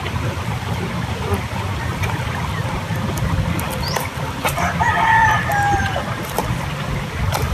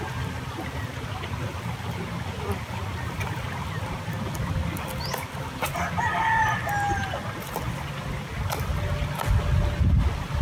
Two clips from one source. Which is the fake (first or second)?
first